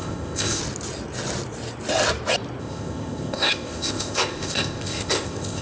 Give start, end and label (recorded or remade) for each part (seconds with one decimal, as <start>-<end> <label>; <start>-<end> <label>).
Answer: 0.0-0.6 remade; 0.6-2.6 recorded; 2.6-5.6 remade